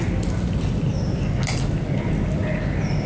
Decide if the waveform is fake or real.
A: real